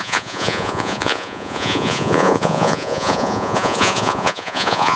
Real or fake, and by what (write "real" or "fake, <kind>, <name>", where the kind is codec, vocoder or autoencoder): fake, vocoder, Vocos